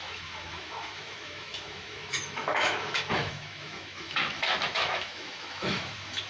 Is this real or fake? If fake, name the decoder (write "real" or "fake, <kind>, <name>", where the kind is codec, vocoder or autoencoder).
fake, autoencoder, DAC-VAE